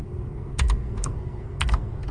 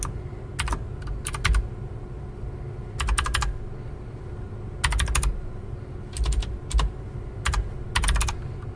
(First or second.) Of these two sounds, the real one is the second